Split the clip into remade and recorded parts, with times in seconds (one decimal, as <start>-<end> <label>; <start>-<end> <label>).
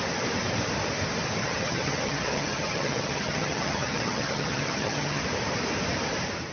0.0-1.4 recorded; 1.4-5.2 remade; 5.2-6.5 recorded